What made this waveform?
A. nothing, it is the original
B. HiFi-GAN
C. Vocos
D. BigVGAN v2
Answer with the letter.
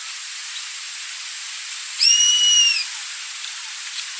A